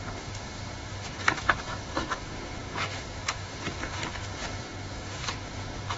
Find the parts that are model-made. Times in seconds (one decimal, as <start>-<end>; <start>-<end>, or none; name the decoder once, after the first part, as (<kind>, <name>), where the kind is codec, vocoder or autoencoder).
0.0-6.0 (autoencoder, DAC-VAE)

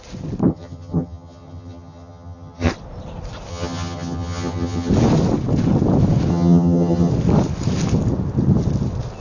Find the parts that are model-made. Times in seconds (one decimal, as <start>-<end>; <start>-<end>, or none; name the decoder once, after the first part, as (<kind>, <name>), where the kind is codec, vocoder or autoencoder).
0.5-2.7 (vocoder, HiFi-GAN); 3.5-4.9; 6.3-7.1

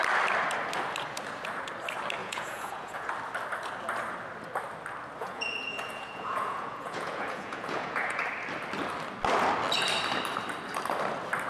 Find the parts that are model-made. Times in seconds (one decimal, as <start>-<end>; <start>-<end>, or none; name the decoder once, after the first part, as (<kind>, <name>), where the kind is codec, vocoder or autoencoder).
2.2-3.1 (vocoder, Vocos); 5.2-8.2

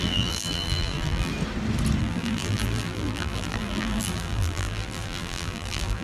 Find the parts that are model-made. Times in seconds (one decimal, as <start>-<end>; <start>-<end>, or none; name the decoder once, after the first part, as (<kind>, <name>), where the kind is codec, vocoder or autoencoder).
0.0-1.3 (vocoder, BigVGAN v2); 2.0-6.0

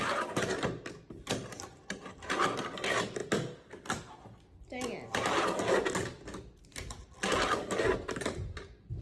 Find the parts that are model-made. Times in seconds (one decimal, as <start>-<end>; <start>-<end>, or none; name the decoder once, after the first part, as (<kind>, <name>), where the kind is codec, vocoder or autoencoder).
none

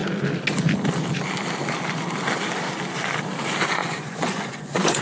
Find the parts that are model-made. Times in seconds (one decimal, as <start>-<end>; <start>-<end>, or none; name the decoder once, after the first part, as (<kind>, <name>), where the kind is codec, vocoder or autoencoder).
3.8-5.0 (vocoder, Vocos)